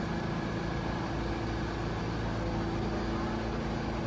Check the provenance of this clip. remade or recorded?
recorded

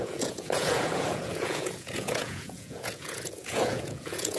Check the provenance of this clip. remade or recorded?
remade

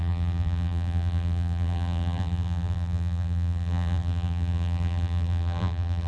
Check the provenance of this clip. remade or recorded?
remade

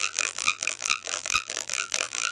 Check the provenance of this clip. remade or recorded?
remade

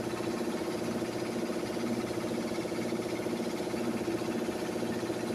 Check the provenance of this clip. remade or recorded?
recorded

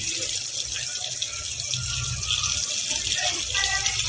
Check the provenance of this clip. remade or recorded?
recorded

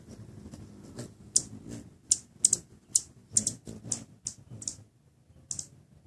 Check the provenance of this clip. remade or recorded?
recorded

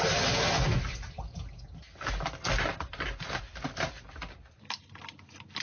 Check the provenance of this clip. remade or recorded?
recorded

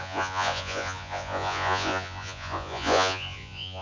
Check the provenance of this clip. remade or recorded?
remade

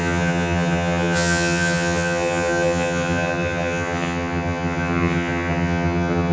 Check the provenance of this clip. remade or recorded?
remade